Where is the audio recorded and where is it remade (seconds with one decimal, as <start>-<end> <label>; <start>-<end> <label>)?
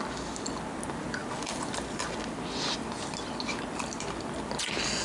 0.0-5.0 recorded